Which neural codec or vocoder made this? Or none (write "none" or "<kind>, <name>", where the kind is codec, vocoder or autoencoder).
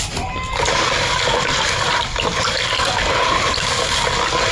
none